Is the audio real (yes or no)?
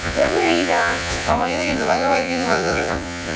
no